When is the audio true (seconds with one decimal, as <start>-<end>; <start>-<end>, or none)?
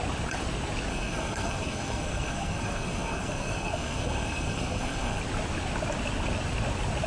0.0-0.9; 5.2-7.1